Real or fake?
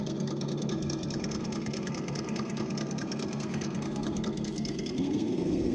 fake